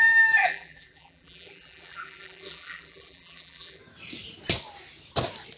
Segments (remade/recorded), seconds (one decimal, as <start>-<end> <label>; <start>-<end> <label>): 0.0-0.4 recorded; 0.4-3.8 remade; 3.8-5.6 recorded